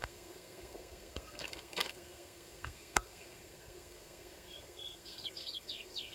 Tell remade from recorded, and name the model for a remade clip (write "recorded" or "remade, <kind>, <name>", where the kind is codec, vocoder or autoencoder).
remade, codec, SNAC